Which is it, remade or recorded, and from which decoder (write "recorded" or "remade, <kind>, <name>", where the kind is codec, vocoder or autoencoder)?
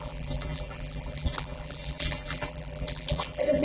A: remade, vocoder, BigVGAN v2